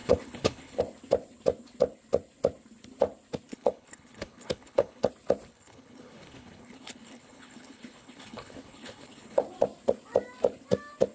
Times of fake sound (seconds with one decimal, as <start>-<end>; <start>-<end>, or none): 0.0-0.8; 3.5-5.1; 5.5-9.4